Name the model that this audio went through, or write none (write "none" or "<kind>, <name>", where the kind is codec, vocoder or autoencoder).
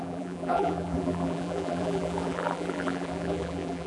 vocoder, BigVGAN v2